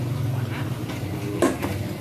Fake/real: real